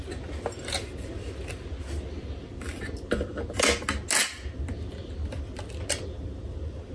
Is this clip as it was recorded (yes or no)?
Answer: yes